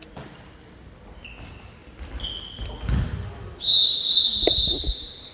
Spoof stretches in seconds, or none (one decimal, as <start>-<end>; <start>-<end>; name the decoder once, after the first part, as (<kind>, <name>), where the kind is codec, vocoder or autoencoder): none